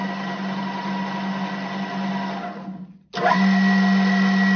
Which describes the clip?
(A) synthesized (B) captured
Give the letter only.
B